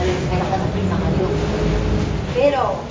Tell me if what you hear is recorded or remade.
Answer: recorded